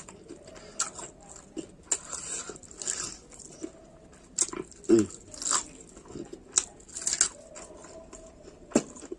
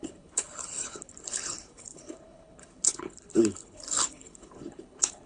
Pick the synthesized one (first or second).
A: second